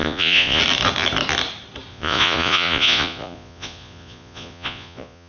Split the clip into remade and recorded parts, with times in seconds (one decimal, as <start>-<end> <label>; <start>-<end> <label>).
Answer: 0.0-0.6 remade; 0.6-1.9 recorded; 1.9-5.3 remade